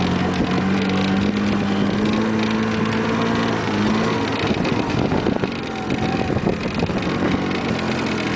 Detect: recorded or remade recorded